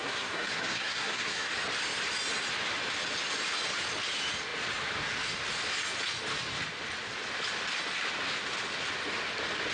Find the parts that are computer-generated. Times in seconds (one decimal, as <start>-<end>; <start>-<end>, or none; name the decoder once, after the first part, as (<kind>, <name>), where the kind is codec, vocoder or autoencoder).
0.0-1.5 (codec, SNAC)

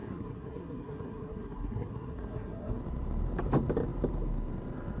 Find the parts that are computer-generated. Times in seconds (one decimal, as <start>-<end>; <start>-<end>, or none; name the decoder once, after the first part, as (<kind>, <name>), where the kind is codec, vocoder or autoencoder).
0.0-2.8 (codec, SNAC)

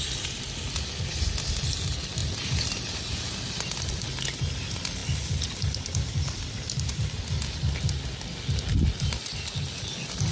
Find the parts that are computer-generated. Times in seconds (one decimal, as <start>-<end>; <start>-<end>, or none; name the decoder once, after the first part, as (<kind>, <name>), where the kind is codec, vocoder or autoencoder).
none

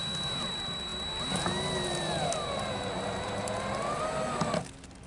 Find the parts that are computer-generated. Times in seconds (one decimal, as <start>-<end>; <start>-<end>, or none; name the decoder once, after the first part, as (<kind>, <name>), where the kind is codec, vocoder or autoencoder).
none

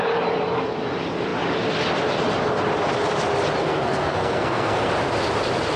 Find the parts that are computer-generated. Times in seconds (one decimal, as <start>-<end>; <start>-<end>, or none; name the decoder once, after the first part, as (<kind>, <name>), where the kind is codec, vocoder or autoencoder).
3.6-4.9 (codec, SNAC)